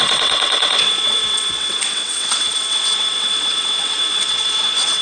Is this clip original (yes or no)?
no